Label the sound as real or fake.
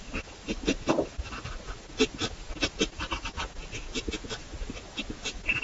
real